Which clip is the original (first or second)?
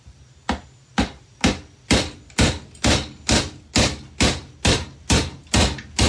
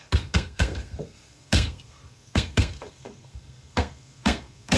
first